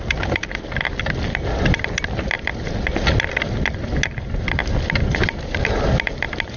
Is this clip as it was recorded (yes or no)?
yes